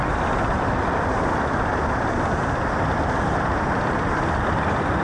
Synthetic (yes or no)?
yes